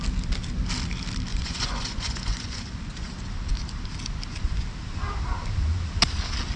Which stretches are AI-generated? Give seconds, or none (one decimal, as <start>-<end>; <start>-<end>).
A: 1.3-3.1